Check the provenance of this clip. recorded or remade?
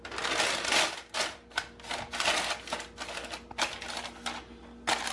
recorded